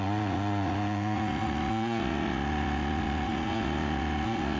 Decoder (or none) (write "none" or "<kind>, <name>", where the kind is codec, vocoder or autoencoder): vocoder, Vocos